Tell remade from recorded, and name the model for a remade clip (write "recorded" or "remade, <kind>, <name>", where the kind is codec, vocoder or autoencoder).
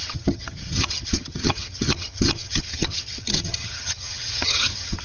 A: remade, vocoder, HiFi-GAN